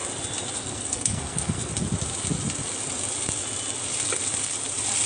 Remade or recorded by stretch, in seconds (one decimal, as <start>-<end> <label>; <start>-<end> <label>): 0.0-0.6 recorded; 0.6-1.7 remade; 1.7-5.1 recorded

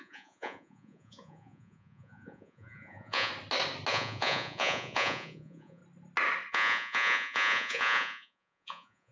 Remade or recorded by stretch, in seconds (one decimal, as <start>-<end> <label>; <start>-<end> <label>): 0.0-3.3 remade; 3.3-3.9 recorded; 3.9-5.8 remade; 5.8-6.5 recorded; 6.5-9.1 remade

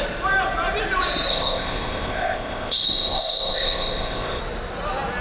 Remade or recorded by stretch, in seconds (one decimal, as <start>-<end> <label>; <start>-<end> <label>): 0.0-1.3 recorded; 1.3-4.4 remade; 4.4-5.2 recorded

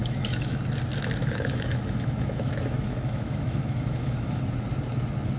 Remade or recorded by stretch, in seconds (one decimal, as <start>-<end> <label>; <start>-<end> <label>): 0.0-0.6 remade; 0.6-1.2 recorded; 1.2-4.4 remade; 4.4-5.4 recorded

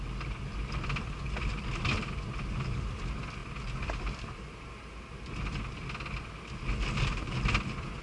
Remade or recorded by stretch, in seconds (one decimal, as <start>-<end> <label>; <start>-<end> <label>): 0.0-8.0 recorded

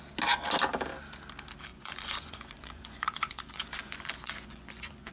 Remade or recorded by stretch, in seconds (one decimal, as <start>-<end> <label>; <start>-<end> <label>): 0.0-1.7 recorded; 1.7-5.1 remade